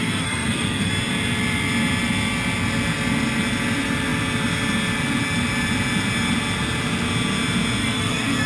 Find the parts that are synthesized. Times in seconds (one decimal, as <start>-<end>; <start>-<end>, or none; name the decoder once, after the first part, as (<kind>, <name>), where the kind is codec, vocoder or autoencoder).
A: 0.0-0.9 (codec, SNAC); 7.8-8.5